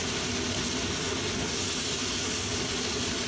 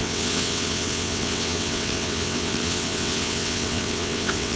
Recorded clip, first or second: first